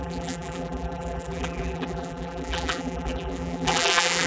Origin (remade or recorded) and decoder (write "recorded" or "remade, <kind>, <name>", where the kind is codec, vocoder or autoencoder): remade, vocoder, BigVGAN v2